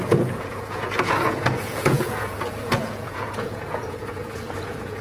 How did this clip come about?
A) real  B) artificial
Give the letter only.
B